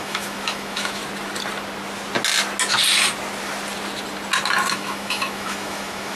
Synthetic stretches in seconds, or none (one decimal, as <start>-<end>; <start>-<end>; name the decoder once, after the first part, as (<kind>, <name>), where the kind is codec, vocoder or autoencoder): 0.0-1.0 (autoencoder, DAC-VAE); 4.7-6.2